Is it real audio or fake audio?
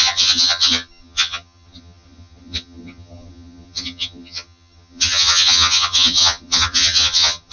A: fake